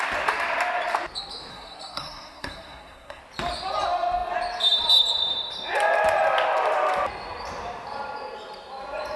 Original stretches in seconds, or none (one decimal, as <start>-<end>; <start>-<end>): 0.0-1.5; 3.2-9.2